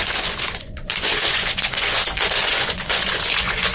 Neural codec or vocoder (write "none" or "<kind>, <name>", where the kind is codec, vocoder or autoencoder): vocoder, Vocos